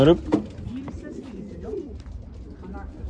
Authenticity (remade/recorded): recorded